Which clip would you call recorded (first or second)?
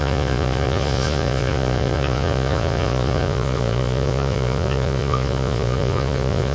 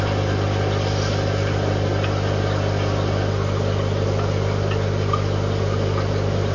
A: second